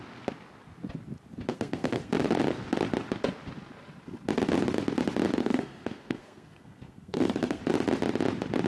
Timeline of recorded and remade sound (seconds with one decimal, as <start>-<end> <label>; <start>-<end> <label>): 0.0-1.5 recorded; 1.5-2.1 remade; 2.1-5.4 recorded; 5.4-7.6 remade; 7.6-8.7 recorded